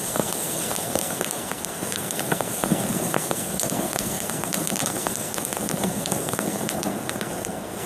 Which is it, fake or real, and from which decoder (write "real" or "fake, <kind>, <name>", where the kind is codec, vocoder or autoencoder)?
fake, codec, SNAC